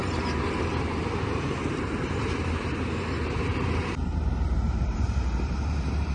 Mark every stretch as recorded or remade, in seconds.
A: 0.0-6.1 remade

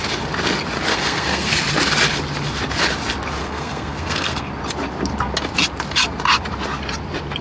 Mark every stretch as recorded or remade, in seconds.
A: 0.0-0.9 recorded; 0.9-1.5 remade; 1.5-3.4 recorded; 3.4-4.5 remade; 4.5-7.4 recorded

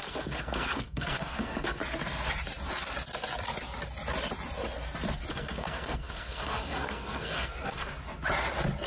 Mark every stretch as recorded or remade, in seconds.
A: 0.0-1.8 remade; 1.8-5.3 recorded; 5.3-8.0 remade; 8.0-8.9 recorded

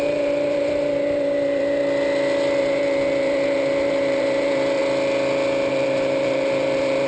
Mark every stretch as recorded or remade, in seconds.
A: 0.0-1.8 remade; 1.8-2.6 recorded; 2.6-4.8 remade; 4.8-5.7 recorded; 5.7-7.1 remade